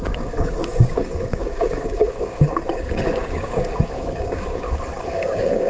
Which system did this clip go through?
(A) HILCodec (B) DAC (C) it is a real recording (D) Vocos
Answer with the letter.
B